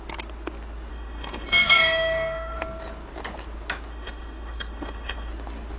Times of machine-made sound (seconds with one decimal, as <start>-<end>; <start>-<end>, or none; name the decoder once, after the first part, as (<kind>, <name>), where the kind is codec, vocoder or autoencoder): 0.9-2.6 (autoencoder, DAC-VAE); 3.9-5.3